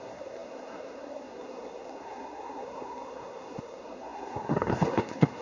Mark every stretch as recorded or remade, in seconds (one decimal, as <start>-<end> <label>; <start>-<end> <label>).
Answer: 0.0-5.4 remade

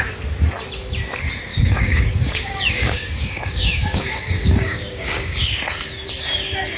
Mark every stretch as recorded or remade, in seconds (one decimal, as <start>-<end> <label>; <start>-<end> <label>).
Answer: 0.0-1.5 recorded; 1.5-5.6 remade; 5.6-6.8 recorded

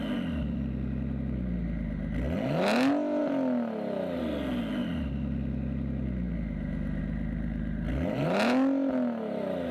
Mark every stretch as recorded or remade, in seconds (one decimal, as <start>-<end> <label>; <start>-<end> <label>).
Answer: 0.0-9.7 recorded